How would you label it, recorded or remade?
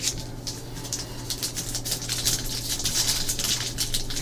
recorded